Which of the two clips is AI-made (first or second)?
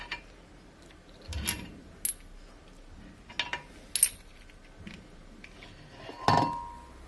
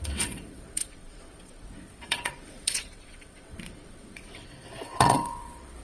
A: second